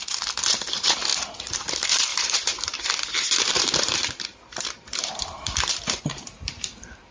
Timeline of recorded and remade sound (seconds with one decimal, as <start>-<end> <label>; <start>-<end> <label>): 0.0-7.1 remade